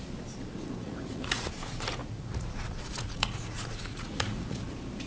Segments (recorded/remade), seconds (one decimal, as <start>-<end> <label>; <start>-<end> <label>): 0.0-0.8 recorded; 0.8-1.5 remade; 1.5-2.0 recorded; 2.0-4.6 remade; 4.6-5.1 recorded